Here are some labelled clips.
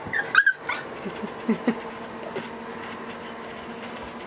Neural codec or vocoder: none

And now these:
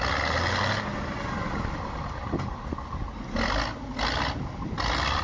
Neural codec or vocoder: none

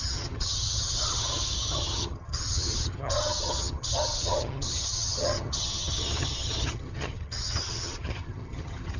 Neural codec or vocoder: vocoder, HiFi-GAN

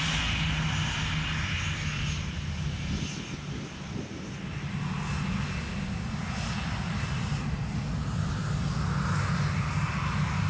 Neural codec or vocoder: none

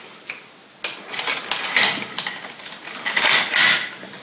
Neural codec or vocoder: none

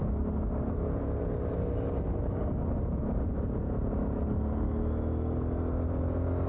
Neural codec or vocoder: none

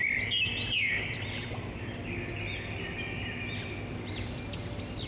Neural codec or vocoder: none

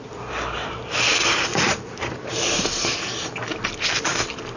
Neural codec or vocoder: none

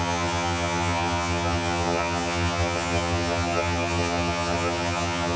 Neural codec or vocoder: vocoder, HiFi-GAN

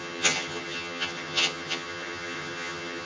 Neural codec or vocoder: vocoder, HiFi-GAN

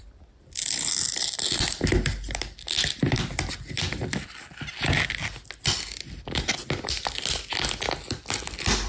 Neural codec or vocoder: none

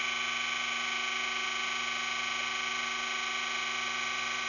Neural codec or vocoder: none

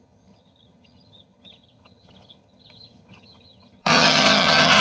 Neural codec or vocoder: vocoder, HiFi-GAN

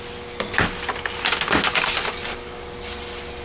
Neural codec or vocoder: none